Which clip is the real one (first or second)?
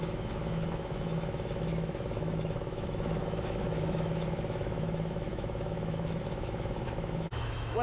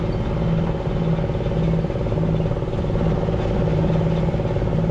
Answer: second